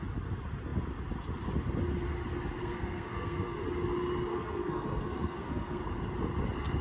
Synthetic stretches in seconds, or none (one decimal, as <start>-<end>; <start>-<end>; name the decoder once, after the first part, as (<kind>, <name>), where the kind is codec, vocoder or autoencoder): 2.6-3.6 (codec, SNAC); 4.3-5.8